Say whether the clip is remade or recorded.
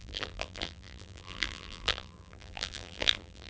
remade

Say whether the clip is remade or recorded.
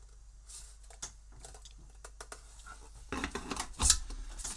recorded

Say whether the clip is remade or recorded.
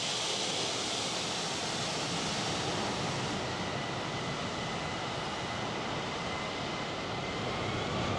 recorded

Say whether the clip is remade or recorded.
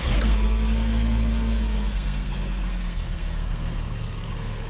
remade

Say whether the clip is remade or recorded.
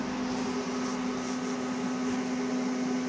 recorded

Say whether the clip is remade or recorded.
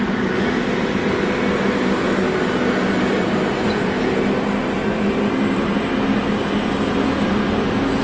recorded